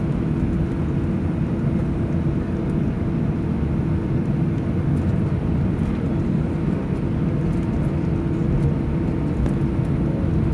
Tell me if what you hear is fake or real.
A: real